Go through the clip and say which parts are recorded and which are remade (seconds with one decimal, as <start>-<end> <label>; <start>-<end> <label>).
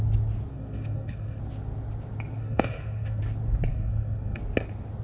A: 0.0-0.5 recorded; 0.5-1.4 remade; 1.4-2.4 recorded; 2.4-3.2 remade; 3.2-3.7 recorded; 3.7-4.4 remade; 4.4-5.0 recorded